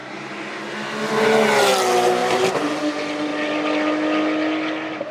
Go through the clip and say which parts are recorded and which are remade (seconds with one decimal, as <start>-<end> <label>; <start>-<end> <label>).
0.0-0.6 remade; 0.6-5.1 recorded